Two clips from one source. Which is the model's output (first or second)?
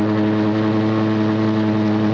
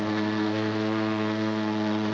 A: second